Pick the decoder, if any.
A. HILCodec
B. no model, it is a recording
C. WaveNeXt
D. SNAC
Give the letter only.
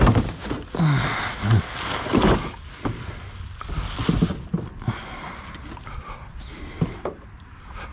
B